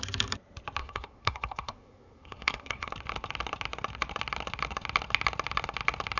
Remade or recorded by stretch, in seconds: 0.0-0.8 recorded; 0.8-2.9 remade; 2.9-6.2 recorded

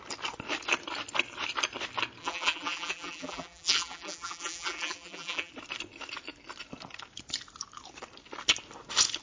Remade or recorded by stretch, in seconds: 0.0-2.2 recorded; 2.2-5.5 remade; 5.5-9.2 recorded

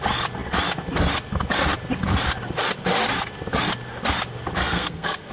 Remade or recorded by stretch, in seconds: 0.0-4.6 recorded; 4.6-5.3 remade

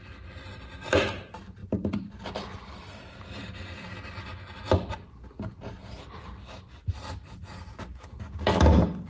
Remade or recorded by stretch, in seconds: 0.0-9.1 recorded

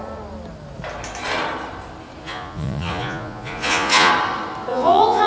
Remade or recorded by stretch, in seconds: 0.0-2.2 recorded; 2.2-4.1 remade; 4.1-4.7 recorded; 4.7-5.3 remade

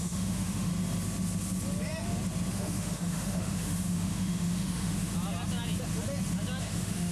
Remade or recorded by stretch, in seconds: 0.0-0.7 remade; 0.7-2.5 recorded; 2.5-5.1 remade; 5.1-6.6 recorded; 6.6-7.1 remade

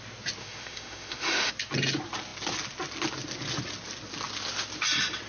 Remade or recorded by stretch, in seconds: 0.0-0.4 recorded; 0.4-1.5 remade; 1.5-5.3 recorded

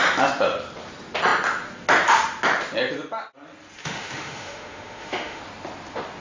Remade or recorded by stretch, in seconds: 0.0-3.8 recorded; 3.8-5.4 remade; 5.4-6.2 recorded